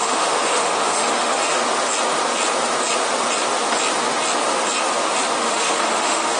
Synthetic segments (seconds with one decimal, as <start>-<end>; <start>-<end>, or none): 0.0-1.6; 5.4-6.4